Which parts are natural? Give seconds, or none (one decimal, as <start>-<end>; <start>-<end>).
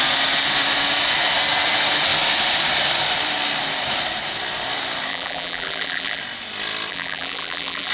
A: 0.0-5.1; 6.2-6.9